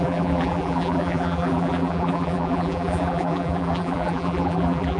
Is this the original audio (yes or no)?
no